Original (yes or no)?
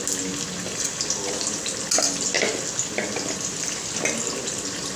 yes